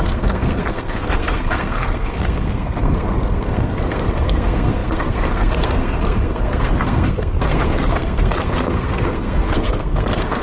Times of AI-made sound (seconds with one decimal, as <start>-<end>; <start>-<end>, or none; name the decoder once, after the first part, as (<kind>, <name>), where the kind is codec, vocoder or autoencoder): 0.0-10.4 (codec, SNAC)